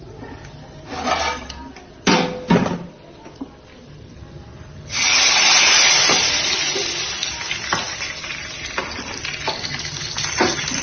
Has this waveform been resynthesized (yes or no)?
no